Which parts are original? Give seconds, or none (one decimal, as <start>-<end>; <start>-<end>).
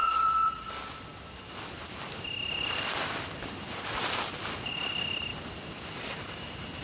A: 0.7-6.8